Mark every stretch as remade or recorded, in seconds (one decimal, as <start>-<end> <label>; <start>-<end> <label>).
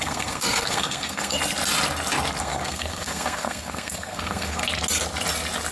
0.0-1.4 remade; 1.4-2.4 recorded; 2.4-4.6 remade; 4.6-5.7 recorded